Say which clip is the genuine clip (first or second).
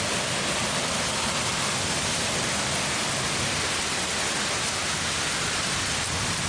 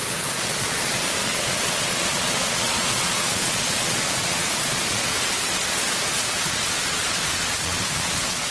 first